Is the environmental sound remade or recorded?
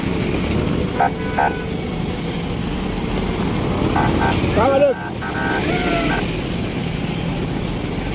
recorded